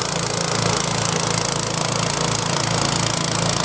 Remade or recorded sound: recorded